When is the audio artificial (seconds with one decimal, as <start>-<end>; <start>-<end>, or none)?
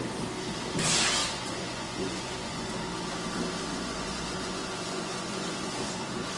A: 1.2-2.7; 3.7-6.4